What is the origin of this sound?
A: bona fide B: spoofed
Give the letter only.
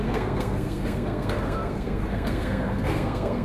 B